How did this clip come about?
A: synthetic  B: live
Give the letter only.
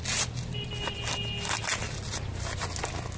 B